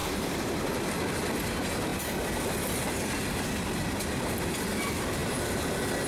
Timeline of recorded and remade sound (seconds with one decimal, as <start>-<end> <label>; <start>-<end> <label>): 0.0-0.6 remade; 0.6-6.1 recorded